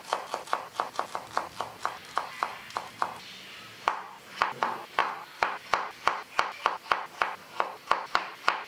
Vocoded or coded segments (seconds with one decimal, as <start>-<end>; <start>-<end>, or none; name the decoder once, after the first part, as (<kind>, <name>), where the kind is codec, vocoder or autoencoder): none